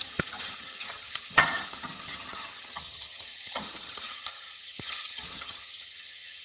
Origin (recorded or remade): remade